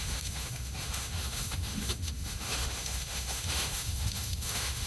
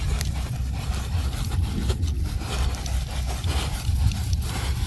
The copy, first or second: first